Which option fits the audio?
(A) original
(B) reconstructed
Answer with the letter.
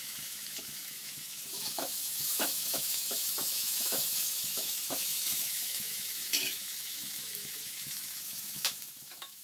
B